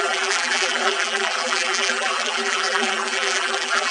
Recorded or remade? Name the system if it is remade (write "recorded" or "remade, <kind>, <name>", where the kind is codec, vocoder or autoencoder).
remade, vocoder, BigVGAN v2